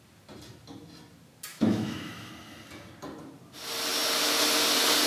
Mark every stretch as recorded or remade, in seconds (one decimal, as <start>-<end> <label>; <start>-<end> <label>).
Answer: 0.0-1.5 recorded; 1.5-2.3 remade; 2.3-5.1 recorded